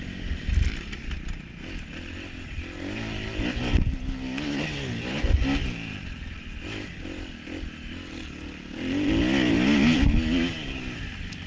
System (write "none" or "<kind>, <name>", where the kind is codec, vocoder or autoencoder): none